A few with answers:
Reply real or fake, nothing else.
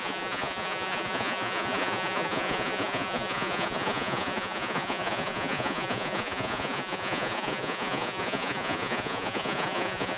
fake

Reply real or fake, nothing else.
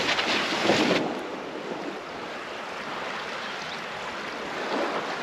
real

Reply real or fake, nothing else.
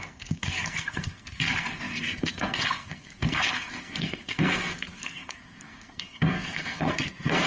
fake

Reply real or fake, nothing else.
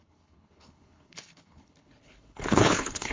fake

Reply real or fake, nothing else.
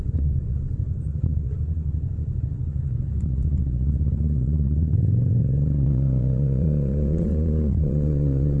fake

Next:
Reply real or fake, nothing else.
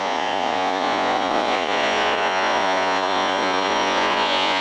fake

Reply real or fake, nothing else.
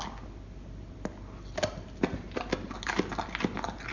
real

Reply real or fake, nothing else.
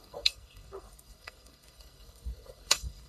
fake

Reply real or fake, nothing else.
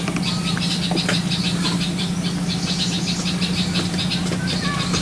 real